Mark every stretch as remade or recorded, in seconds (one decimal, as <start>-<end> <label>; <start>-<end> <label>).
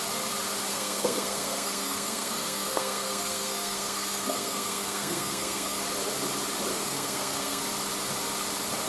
0.0-0.7 recorded; 0.7-5.8 remade; 5.8-6.7 recorded; 6.7-7.6 remade; 7.6-8.9 recorded